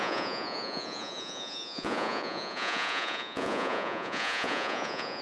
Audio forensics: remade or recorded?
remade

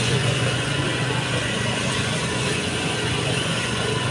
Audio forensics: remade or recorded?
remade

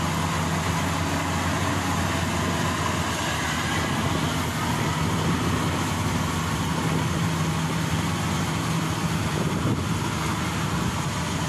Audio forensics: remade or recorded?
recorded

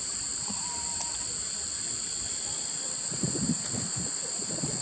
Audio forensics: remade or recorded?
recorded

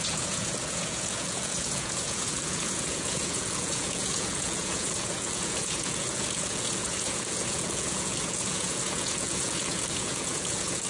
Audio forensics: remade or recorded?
remade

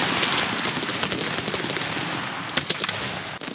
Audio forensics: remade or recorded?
recorded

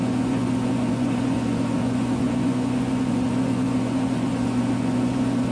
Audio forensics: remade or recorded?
remade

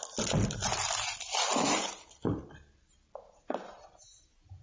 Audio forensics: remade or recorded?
recorded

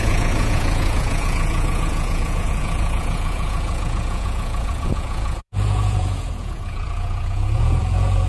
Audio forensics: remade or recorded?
remade